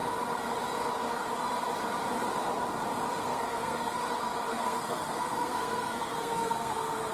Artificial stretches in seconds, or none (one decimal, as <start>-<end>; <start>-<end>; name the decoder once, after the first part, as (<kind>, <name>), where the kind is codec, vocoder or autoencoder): 3.2-4.0 (codec, SNAC); 4.5-7.1